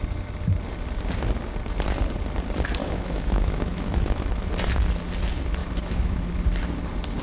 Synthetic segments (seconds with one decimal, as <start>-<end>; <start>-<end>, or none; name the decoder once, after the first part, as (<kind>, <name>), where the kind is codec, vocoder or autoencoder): 2.8-4.5 (autoencoder, DAC-VAE); 5.6-6.3